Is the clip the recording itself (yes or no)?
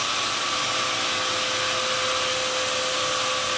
yes